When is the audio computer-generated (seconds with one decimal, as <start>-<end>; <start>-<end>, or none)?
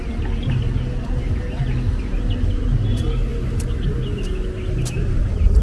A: none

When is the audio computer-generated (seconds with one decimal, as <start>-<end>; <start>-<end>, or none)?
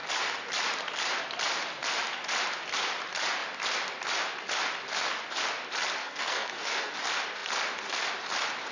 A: 6.0-6.9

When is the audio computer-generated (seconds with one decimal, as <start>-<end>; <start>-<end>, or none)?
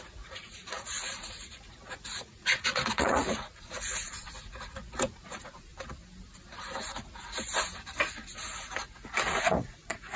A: 0.0-5.7; 9.4-10.2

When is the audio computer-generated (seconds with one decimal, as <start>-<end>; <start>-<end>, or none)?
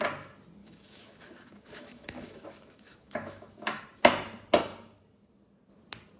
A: 0.6-3.8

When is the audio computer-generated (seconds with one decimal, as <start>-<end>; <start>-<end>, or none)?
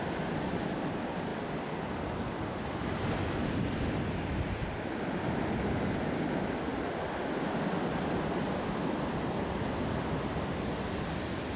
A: none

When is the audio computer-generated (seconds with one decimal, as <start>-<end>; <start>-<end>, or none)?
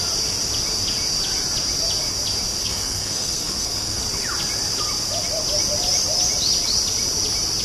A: 2.6-4.0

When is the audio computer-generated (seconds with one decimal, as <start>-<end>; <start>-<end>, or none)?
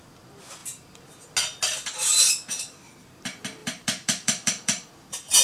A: 3.6-4.9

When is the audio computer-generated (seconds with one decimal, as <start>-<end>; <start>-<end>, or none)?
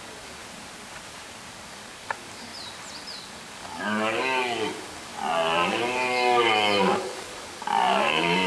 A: 0.0-0.4; 1.5-2.5; 3.2-5.1; 5.7-8.5